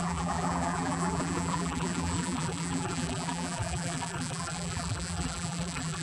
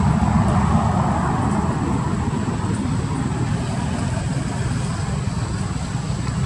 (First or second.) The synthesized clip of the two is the first